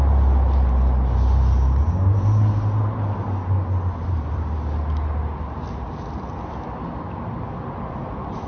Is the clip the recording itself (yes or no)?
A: yes